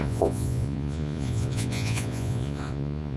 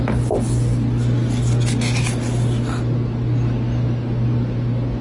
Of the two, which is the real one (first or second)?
second